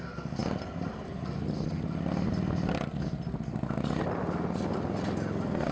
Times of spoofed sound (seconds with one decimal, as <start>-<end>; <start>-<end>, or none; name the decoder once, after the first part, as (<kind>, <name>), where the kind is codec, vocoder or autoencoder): none